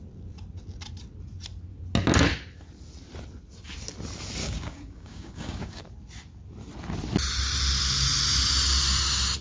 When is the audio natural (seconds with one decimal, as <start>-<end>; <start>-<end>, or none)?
0.0-4.4; 5.8-9.4